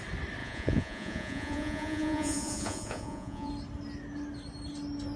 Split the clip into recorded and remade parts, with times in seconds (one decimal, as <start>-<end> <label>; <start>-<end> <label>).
0.0-0.4 recorded; 0.4-3.5 remade; 3.5-5.2 recorded